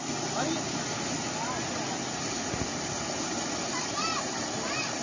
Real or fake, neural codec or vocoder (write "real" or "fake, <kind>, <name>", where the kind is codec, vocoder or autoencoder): real